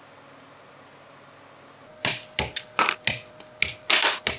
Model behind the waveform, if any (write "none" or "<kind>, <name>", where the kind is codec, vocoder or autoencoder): none